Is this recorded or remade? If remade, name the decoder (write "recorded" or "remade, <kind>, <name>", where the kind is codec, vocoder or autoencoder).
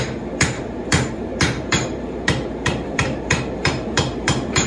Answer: remade, vocoder, BigVGAN v2